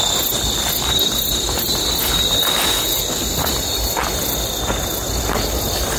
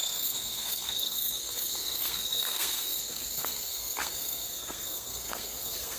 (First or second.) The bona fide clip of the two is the first